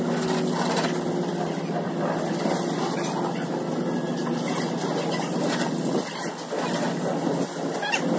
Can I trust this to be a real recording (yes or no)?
yes